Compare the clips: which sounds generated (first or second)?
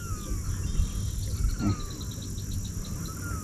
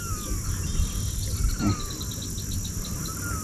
second